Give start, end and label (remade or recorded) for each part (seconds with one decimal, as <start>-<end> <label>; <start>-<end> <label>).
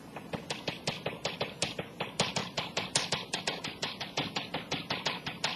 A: 0.0-2.4 recorded; 2.4-3.4 remade; 3.4-5.6 recorded